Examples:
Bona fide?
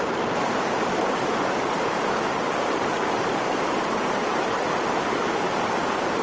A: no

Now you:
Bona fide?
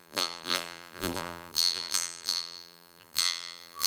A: no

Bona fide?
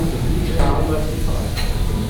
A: no